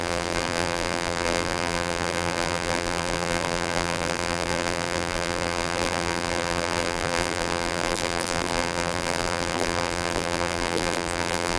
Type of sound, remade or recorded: remade